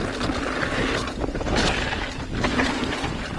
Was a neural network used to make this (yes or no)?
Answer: no